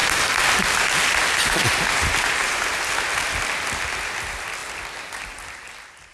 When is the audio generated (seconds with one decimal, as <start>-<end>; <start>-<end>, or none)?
none